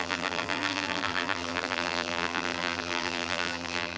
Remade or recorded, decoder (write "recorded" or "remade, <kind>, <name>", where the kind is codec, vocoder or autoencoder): remade, vocoder, BigVGAN v2